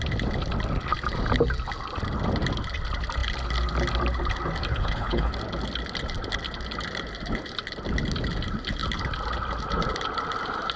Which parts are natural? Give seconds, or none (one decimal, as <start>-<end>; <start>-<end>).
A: 0.0-4.7; 5.3-10.8